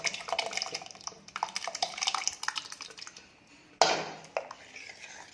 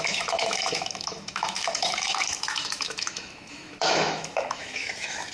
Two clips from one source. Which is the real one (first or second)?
first